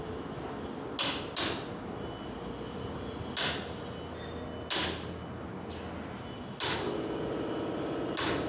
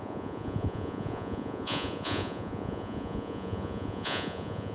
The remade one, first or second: second